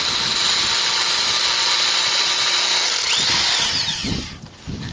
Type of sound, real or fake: real